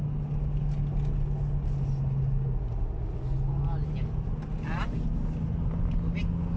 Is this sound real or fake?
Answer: real